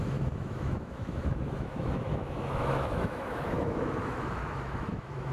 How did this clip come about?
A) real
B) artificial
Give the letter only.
B